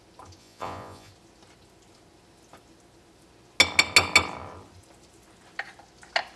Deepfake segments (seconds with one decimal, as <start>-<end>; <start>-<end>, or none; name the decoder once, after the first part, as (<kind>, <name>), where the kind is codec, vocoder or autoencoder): 0.4-1.1 (vocoder, Vocos)